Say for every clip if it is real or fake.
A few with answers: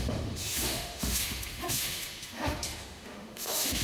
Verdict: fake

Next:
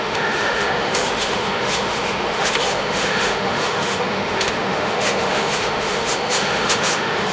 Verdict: fake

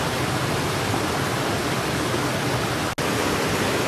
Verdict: real